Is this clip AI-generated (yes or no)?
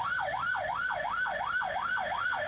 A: no